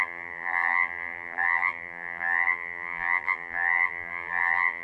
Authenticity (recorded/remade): remade